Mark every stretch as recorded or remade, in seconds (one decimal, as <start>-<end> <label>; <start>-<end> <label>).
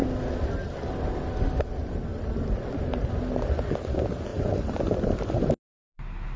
0.0-2.1 recorded; 2.1-3.1 remade; 3.1-6.4 recorded